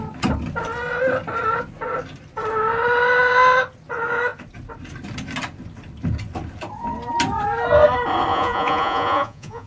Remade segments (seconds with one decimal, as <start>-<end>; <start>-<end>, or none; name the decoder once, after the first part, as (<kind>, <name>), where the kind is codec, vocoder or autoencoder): 8.3-9.7 (vocoder, Vocos)